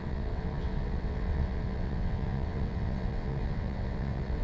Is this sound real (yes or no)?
no